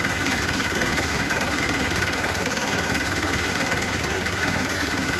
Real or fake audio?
fake